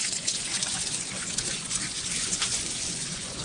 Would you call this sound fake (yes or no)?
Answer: yes